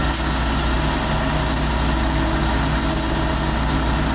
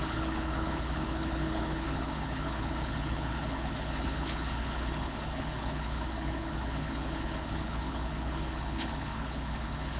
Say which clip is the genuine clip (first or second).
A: first